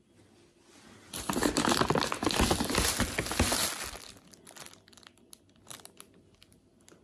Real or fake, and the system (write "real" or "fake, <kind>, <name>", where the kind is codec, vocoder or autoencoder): real